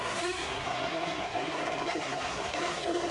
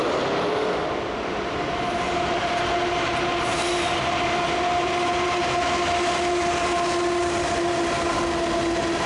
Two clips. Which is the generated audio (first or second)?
first